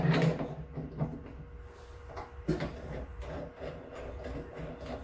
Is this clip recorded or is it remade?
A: recorded